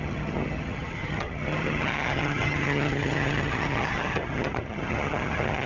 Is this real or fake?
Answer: fake